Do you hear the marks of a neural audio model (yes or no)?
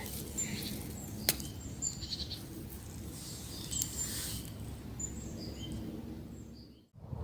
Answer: no